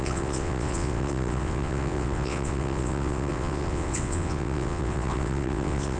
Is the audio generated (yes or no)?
yes